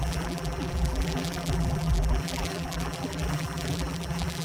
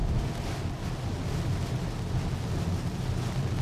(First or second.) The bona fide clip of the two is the second